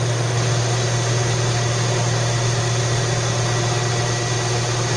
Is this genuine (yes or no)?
yes